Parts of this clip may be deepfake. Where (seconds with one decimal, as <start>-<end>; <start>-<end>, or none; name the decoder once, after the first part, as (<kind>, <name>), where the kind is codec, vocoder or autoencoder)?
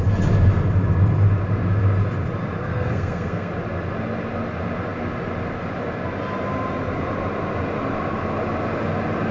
2.6-3.5 (codec, SNAC)